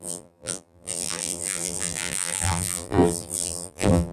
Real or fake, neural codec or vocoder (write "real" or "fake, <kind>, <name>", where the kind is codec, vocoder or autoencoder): fake, vocoder, BigVGAN v2